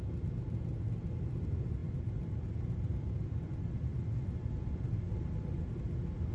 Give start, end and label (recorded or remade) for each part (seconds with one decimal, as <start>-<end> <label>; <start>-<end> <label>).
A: 0.0-0.7 recorded; 0.7-1.4 remade; 1.4-1.8 recorded; 1.8-2.4 remade; 2.4-2.9 recorded; 2.9-5.7 remade; 5.7-6.3 recorded